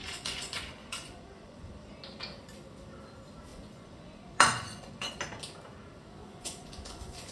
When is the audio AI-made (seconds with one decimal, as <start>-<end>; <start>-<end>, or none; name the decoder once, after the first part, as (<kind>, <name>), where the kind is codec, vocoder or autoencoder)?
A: 0.0-1.7 (vocoder, Vocos); 3.5-5.1; 6.2-7.3